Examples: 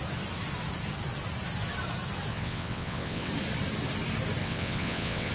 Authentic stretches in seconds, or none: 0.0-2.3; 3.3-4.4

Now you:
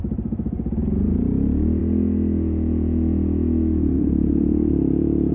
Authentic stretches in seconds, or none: 0.0-5.3

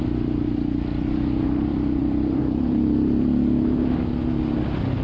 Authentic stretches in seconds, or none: 0.0-1.7; 3.9-5.0